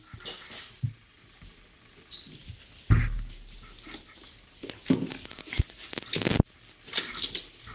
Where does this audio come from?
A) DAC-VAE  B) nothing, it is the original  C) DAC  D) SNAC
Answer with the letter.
B